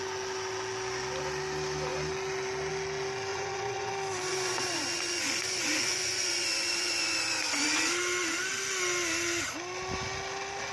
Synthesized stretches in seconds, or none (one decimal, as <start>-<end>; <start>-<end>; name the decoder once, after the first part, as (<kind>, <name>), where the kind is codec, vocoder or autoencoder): 3.3-3.9 (vocoder, Vocos); 4.3-7.8